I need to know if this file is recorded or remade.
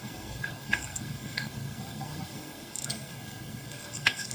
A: remade